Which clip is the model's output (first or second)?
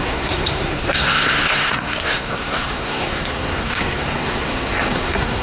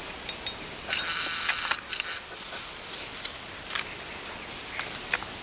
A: first